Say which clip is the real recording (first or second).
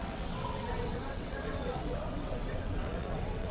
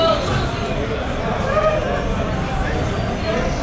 second